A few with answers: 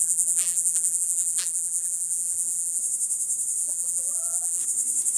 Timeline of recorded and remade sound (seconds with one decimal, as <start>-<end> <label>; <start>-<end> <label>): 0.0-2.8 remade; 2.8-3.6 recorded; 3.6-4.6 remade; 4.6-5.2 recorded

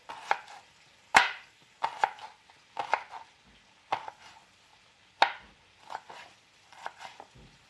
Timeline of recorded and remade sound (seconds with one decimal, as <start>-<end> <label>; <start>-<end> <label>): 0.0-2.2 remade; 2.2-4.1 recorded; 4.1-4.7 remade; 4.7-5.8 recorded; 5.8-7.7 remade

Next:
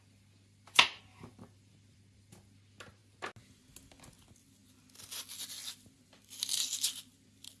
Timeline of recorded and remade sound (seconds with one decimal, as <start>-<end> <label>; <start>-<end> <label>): 0.0-1.7 recorded; 1.7-2.3 remade; 2.3-7.6 recorded

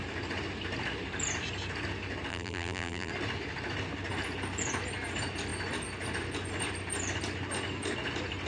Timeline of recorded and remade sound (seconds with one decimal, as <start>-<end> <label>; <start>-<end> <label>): 0.0-2.3 recorded; 2.3-3.1 remade; 3.1-8.5 recorded